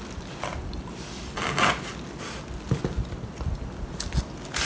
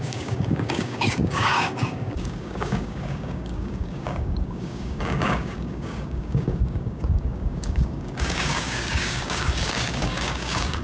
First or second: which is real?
first